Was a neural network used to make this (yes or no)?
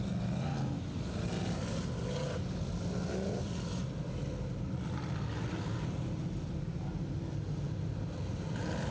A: no